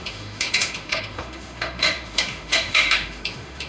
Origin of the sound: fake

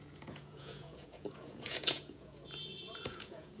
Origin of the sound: fake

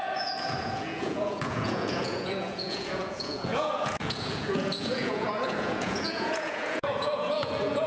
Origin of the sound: fake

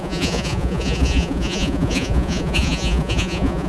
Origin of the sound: fake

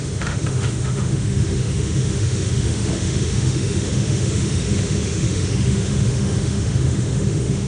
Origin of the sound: fake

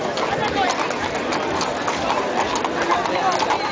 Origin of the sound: real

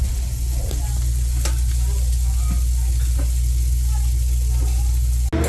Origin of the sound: real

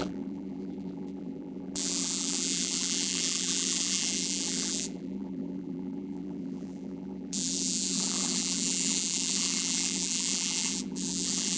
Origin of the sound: fake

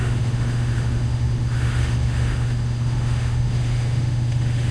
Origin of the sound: fake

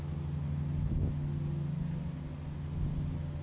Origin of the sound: real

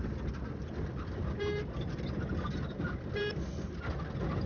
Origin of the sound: fake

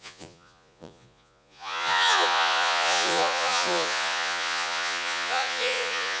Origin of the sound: fake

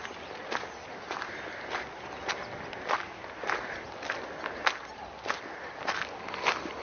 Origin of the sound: real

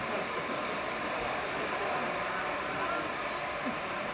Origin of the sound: real